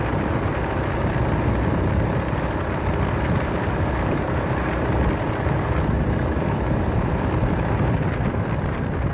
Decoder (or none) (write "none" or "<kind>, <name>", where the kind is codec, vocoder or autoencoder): none